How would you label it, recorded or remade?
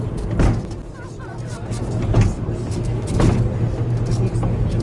recorded